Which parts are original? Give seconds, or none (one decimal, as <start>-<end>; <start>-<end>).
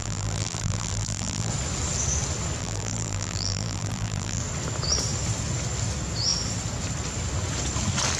1.5-2.6; 4.4-8.2